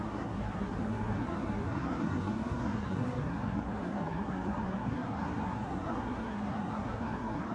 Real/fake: fake